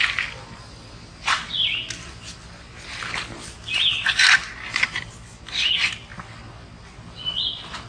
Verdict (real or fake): real